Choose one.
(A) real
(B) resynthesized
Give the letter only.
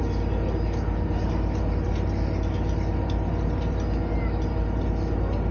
A